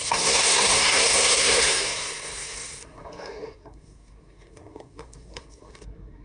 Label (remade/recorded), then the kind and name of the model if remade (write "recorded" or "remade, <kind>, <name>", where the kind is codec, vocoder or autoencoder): remade, codec, SNAC